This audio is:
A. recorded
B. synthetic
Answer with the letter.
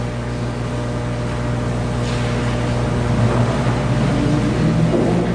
A